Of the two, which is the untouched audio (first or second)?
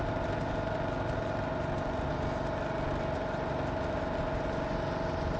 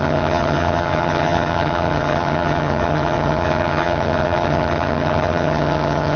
first